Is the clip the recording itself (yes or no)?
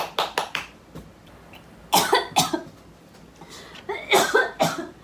yes